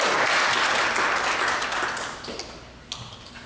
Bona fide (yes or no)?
yes